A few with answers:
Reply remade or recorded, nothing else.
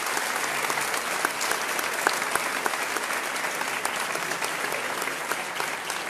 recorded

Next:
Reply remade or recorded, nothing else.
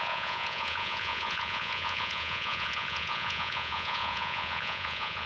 remade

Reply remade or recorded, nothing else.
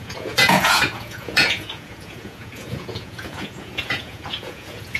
remade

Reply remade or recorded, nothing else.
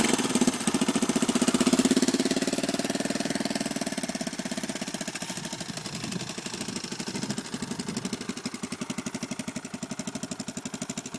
recorded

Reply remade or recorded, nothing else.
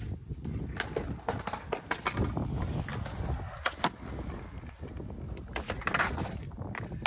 recorded